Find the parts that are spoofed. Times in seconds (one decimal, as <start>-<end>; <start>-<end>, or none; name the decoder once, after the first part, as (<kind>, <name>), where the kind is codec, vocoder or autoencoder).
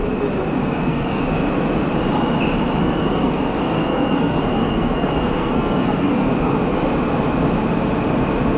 0.6-1.2 (codec, SNAC); 2.8-6.3